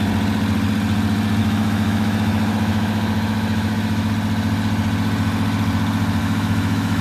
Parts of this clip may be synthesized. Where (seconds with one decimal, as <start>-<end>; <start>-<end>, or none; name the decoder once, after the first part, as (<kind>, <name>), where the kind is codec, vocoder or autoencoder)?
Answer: 1.4-4.1 (autoencoder, DAC-VAE); 6.2-7.0